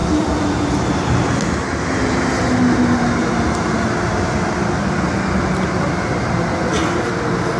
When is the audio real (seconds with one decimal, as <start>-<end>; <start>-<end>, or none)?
0.0-7.6